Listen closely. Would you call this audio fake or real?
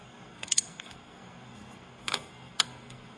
fake